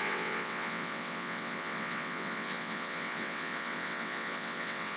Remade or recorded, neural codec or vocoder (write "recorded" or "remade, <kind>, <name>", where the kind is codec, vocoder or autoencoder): remade, vocoder, WaveNeXt